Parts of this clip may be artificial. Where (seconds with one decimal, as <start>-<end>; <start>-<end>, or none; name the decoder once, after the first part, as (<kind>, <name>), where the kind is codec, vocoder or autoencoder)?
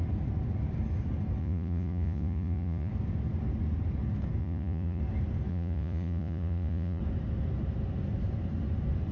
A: 1.4-2.9 (vocoder, Vocos); 4.4-5.0; 5.5-7.0